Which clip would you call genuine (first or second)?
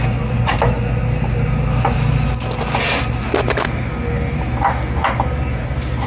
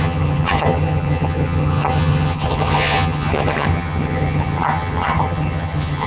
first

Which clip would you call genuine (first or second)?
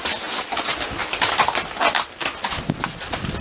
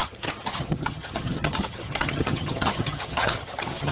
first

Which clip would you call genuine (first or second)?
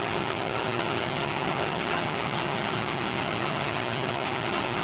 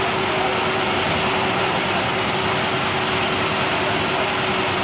second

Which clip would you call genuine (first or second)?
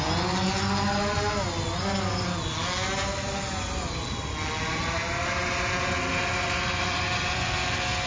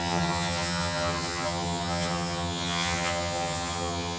first